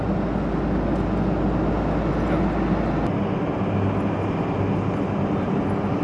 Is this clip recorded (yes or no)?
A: yes